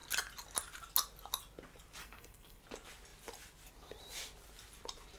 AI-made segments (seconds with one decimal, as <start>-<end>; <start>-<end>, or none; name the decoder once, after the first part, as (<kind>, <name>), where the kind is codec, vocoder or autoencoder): 2.0-2.6 (codec, SNAC)